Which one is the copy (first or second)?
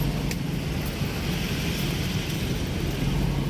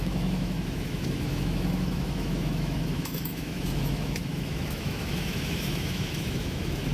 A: second